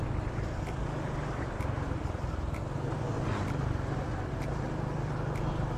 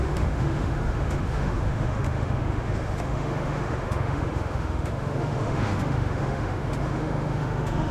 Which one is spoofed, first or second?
second